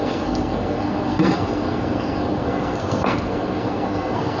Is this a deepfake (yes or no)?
yes